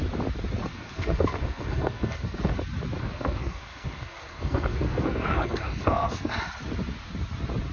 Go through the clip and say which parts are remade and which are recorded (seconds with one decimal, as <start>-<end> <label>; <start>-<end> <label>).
0.0-0.7 recorded; 0.7-2.6 remade; 2.6-3.0 recorded; 3.0-6.4 remade; 6.4-7.7 recorded